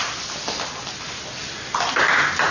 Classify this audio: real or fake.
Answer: real